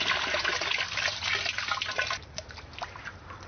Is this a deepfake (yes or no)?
no